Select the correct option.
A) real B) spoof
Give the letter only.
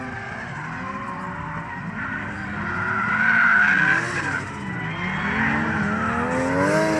A